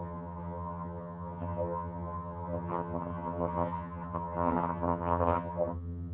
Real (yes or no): no